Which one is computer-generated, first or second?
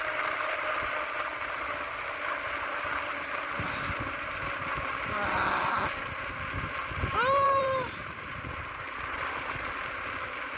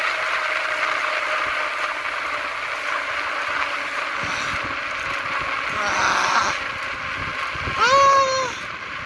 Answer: first